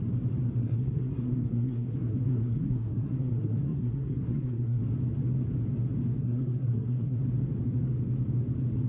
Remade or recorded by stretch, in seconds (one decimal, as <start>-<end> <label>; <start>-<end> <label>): 0.0-0.6 recorded; 0.6-4.8 remade; 4.8-6.2 recorded; 6.2-7.2 remade; 7.2-8.9 recorded